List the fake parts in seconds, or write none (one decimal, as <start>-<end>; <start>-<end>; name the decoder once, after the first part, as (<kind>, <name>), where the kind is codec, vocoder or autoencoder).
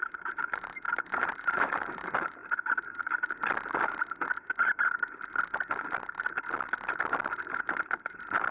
0.0-2.4 (vocoder, BigVGAN v2); 7.5-8.5